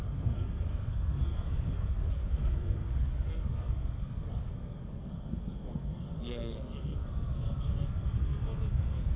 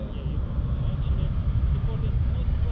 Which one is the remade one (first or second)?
first